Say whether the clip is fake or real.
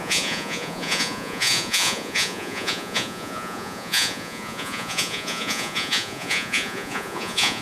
fake